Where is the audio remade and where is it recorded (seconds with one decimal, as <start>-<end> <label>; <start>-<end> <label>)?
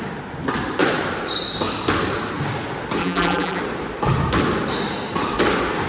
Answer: 0.0-3.0 recorded; 3.0-3.6 remade; 3.6-5.9 recorded